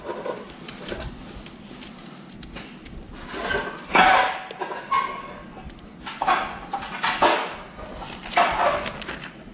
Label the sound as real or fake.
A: real